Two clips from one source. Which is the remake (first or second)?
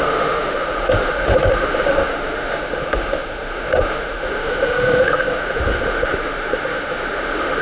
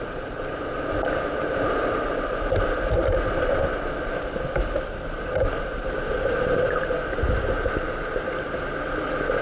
first